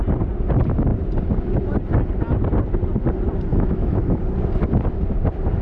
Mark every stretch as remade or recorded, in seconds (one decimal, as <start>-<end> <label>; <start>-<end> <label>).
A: 0.0-3.5 recorded; 3.5-4.2 remade; 4.2-5.6 recorded